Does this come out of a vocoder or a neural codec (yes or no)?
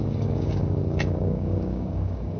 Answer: yes